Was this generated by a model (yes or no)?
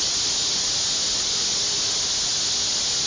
no